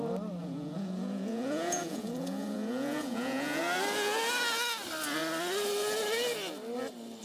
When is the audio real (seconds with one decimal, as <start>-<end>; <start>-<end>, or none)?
0.0-0.4; 3.6-7.2

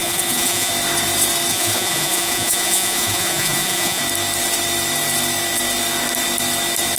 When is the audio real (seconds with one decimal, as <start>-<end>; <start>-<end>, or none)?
0.7-1.5; 4.0-7.0

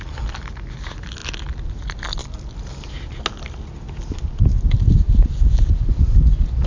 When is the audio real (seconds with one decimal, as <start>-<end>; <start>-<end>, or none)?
0.0-6.7

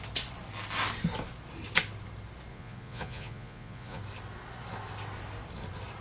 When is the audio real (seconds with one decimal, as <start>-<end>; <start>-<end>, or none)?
0.0-2.5; 4.0-6.0

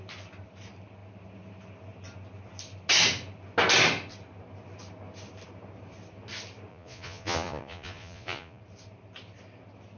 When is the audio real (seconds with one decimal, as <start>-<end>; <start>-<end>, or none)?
0.0-6.7; 8.6-10.0

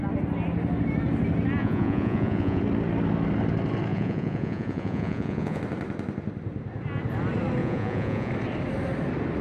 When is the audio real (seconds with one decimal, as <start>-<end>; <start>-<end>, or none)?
0.0-1.6; 2.6-3.9; 5.6-7.6; 8.3-9.4

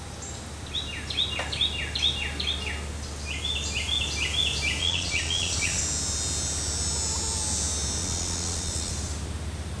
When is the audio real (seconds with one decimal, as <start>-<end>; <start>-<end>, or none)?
0.0-4.8; 5.8-8.0; 8.9-9.8